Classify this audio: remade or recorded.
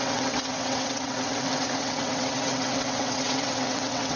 remade